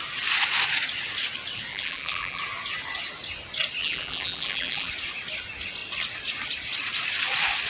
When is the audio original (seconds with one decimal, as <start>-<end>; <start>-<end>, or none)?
0.0-1.7; 2.4-3.8; 4.9-7.7